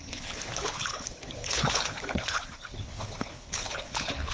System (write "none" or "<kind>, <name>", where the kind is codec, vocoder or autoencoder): codec, HILCodec